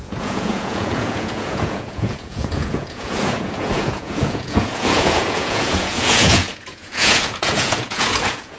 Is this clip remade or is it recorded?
remade